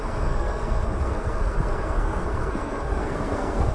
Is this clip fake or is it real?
fake